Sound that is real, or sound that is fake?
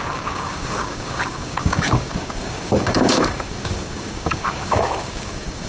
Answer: fake